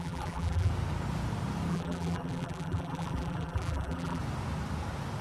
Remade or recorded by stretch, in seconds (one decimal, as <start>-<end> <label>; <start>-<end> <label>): 0.0-0.7 remade; 0.7-1.7 recorded; 1.7-4.2 remade; 4.2-5.2 recorded